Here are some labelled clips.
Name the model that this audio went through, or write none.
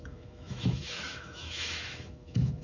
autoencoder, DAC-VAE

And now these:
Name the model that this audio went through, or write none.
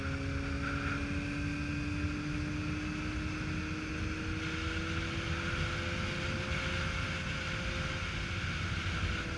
none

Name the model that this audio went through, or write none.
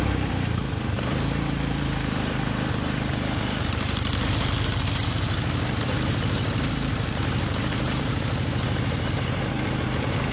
vocoder, BigVGAN v2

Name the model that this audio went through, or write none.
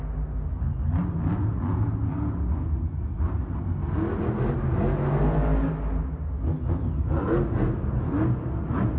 none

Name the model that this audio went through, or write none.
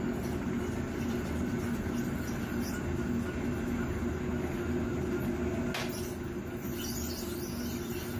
none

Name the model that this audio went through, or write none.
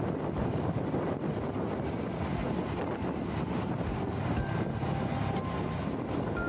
none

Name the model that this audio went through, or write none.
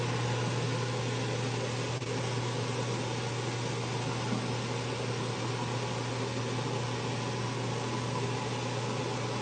none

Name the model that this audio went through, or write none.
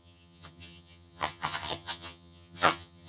vocoder, HiFi-GAN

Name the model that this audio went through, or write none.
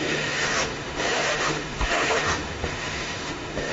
autoencoder, DAC-VAE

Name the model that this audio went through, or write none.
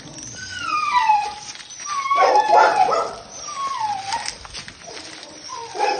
none